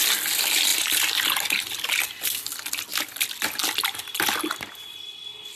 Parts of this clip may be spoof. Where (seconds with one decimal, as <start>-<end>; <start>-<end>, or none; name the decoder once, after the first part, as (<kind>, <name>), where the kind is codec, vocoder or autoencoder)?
0.7-1.9 (vocoder, BigVGAN v2)